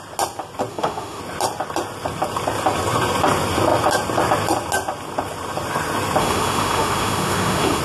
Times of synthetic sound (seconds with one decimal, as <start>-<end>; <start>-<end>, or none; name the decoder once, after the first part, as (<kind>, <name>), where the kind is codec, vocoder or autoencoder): 0.7-1.2 (autoencoder, DAC-VAE); 6.2-7.8